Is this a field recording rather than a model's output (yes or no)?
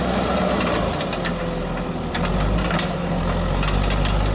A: yes